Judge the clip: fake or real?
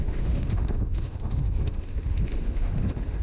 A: fake